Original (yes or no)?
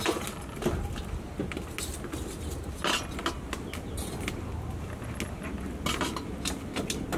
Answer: yes